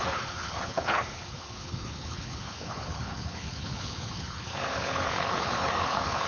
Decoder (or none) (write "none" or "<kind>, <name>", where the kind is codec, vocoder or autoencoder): codec, HILCodec